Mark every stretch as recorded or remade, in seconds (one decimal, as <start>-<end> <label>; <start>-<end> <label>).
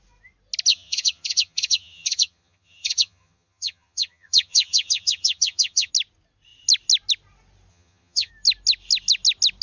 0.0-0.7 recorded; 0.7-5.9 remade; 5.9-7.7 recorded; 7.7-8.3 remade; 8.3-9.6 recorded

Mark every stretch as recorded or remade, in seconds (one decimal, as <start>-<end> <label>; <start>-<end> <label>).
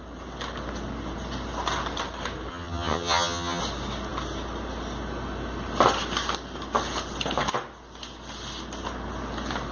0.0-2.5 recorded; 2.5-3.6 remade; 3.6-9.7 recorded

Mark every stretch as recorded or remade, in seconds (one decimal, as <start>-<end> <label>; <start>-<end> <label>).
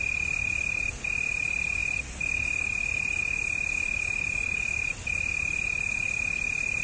0.0-6.8 recorded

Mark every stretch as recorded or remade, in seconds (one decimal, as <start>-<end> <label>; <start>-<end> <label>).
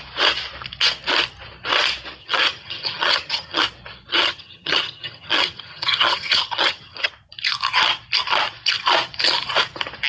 0.0-2.2 recorded; 2.2-3.6 remade; 3.6-4.1 recorded; 4.1-7.1 remade; 7.1-10.1 recorded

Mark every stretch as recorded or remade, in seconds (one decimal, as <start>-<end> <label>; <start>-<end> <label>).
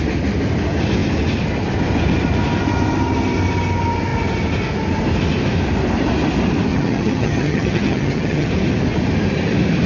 0.0-6.7 recorded; 6.7-8.5 remade; 8.5-9.9 recorded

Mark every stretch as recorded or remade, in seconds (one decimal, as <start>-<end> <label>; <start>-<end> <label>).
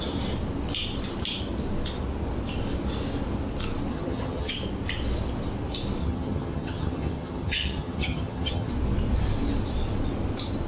0.0-3.9 recorded; 3.9-4.5 remade; 4.5-6.0 recorded; 6.0-8.7 remade; 8.7-10.7 recorded